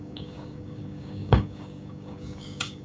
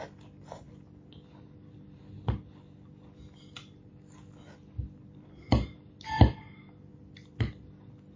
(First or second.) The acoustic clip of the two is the second